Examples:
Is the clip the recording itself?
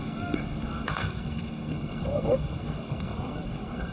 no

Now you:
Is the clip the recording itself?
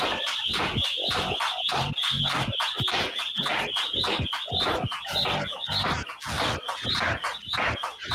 yes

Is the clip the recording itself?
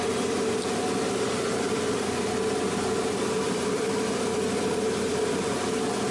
yes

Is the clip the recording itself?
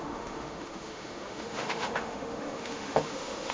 no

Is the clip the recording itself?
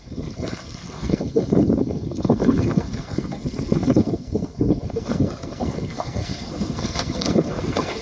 no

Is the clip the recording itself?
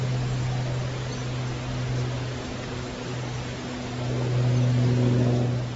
yes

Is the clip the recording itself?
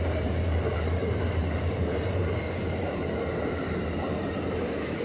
no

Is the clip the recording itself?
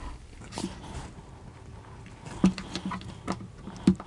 yes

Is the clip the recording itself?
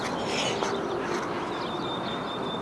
yes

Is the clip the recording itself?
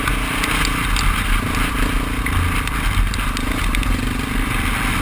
yes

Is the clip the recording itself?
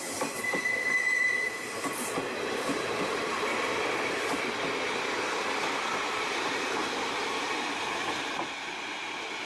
yes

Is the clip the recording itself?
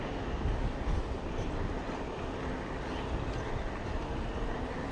yes